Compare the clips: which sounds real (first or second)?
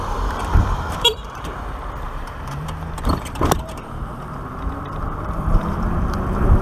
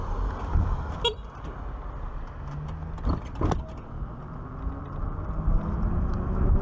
second